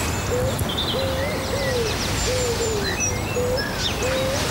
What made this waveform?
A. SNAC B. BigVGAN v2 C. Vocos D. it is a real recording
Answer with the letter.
D